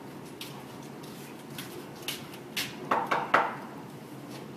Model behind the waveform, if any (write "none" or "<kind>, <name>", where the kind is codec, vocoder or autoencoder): none